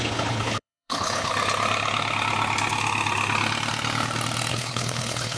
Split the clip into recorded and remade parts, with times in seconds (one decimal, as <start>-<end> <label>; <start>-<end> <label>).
0.0-1.3 remade; 1.3-4.5 recorded; 4.5-5.4 remade